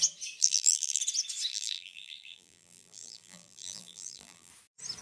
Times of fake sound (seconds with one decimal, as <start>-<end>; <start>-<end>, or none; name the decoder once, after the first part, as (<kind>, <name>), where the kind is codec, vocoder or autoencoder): 0.4-1.0 (vocoder, BigVGAN v2); 1.5-4.5